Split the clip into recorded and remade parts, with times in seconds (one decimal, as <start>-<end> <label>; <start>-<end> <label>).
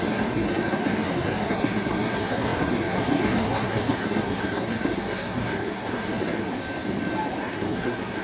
0.0-6.6 remade; 6.6-7.4 recorded; 7.4-8.2 remade